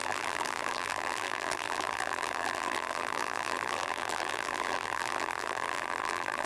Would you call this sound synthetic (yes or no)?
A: yes